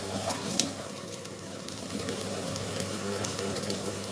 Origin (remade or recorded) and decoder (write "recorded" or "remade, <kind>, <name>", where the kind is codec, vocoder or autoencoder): remade, codec, SNAC